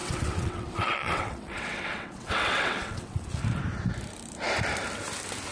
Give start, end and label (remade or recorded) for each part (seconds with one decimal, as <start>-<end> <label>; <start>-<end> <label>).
0.0-3.3 remade; 3.3-5.5 recorded